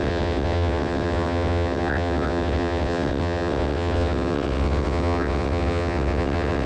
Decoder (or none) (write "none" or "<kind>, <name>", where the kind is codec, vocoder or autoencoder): vocoder, WaveNeXt